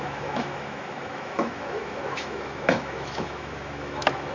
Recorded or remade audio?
remade